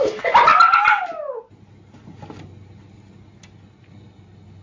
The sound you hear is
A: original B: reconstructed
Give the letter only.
A